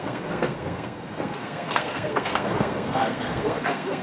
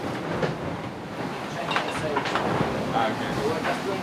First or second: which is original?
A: second